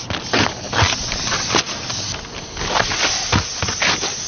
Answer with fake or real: real